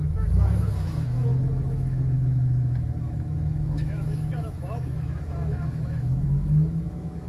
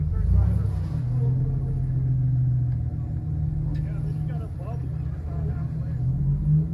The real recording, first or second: second